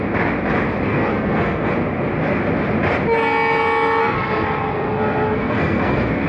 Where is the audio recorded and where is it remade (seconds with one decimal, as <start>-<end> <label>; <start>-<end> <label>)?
0.0-0.9 recorded; 0.9-1.7 remade; 1.7-4.0 recorded; 4.0-6.3 remade